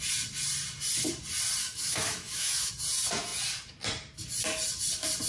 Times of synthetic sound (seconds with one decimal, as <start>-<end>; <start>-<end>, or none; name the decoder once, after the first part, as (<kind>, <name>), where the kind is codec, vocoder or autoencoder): 1.6-2.7 (autoencoder, DAC-VAE)